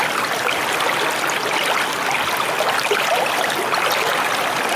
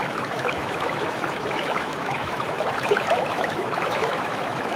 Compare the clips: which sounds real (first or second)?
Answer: first